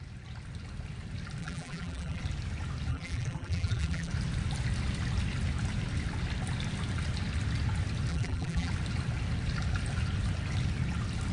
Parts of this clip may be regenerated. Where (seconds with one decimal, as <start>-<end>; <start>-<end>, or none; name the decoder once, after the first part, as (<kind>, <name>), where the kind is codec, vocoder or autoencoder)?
1.4-2.2 (vocoder, BigVGAN v2); 2.9-4.1; 8.1-8.7